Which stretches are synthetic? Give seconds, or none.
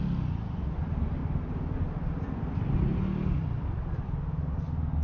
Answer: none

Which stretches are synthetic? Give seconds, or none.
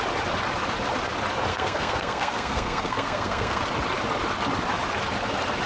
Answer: 1.5-3.6 (codec, SNAC)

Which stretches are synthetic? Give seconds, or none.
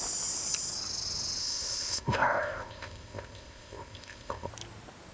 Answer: 1.4-4.5 (codec, ZipCodec)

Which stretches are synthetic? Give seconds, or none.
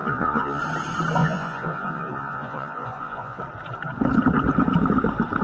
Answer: 0.0-0.6 (vocoder, Vocos); 1.2-3.4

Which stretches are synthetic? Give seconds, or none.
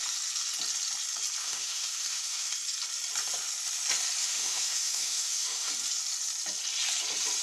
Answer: 1.4-2.5 (autoencoder, DAC-VAE); 4.2-5.7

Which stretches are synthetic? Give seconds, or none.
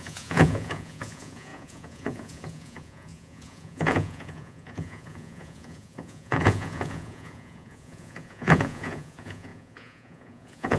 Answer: 0.0-10.8 (vocoder, Vocos)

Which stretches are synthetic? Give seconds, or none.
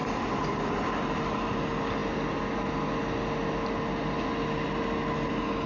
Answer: none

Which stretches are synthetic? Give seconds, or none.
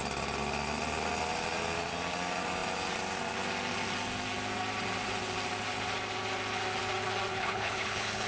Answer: 7.3-8.3 (codec, HILCodec)